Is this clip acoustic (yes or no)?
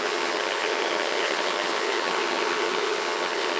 no